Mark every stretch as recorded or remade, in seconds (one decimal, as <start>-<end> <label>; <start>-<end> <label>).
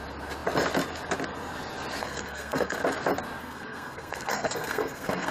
0.0-2.0 recorded; 2.0-2.8 remade; 2.8-3.4 recorded; 3.4-5.3 remade